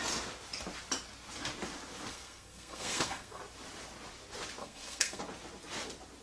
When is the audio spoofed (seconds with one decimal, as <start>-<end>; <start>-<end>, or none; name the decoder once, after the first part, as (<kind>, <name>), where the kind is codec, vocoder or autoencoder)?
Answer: 2.1-3.4 (codec, SNAC); 4.6-5.2